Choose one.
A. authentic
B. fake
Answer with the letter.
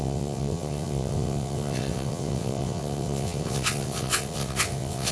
B